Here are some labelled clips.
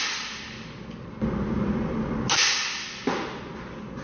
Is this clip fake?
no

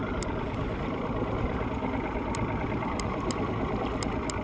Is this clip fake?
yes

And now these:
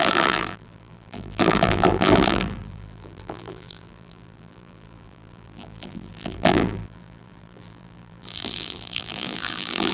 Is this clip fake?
yes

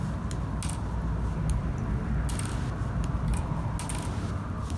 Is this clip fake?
no